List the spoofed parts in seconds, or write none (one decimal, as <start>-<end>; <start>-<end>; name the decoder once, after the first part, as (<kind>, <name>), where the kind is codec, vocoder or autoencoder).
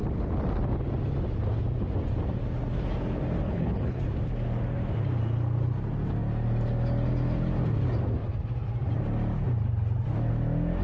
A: 3.4-4.0 (codec, HILCodec)